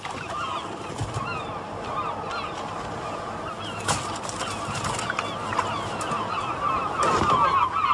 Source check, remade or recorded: recorded